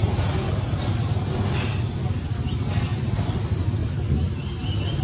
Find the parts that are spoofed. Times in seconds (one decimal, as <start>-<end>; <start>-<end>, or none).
none